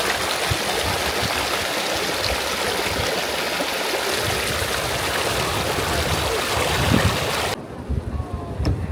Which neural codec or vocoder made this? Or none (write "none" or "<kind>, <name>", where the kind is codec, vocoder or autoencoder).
none